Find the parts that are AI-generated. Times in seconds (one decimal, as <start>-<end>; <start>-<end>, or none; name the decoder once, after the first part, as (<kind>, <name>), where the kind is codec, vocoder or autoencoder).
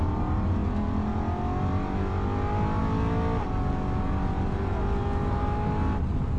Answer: none